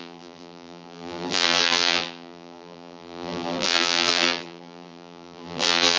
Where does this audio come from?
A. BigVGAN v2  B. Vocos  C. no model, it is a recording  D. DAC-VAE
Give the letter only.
A